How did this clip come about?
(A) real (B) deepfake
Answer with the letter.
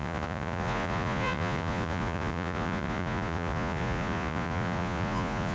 B